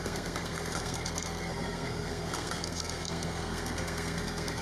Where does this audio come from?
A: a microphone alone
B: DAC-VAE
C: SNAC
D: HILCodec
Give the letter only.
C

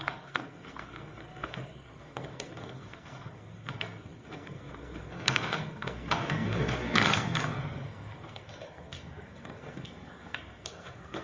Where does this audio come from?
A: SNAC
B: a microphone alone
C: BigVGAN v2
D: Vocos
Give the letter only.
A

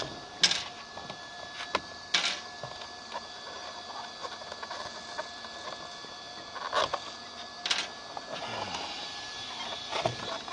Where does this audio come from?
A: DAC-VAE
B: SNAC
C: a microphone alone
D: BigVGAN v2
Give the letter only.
C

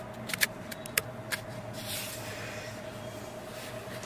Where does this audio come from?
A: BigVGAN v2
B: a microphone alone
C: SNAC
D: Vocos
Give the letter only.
B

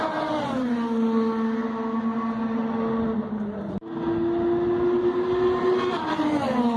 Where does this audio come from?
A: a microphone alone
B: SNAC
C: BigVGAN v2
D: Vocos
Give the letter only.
A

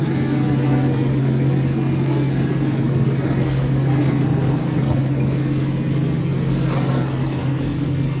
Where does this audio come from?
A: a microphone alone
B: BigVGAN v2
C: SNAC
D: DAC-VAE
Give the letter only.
C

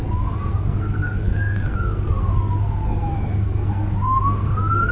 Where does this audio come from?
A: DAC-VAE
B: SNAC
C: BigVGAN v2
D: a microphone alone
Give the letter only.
B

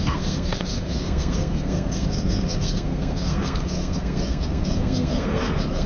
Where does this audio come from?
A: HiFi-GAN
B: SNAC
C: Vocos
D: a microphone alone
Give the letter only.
B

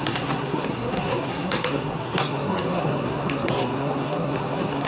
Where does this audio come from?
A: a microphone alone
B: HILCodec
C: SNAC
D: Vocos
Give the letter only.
C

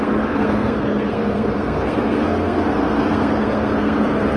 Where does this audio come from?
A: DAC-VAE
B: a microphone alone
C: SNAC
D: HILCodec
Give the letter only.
C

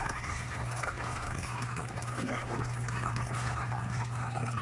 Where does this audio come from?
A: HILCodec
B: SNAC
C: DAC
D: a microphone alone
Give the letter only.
B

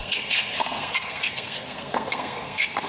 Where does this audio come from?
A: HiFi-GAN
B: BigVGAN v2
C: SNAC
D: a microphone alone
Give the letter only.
C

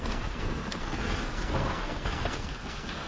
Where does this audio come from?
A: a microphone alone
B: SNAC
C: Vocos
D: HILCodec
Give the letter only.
B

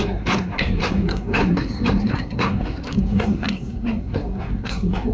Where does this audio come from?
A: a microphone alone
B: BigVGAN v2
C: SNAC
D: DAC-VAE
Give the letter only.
C